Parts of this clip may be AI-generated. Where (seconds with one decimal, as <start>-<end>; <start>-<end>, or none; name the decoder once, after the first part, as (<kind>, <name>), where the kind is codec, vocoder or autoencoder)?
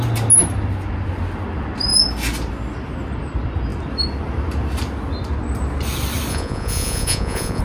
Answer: 6.3-7.6 (vocoder, Vocos)